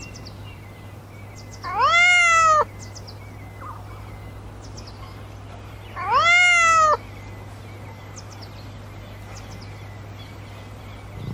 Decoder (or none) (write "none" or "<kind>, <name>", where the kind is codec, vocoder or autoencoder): none